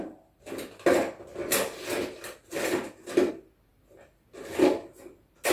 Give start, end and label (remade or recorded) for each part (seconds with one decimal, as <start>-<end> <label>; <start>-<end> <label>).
0.0-5.5 recorded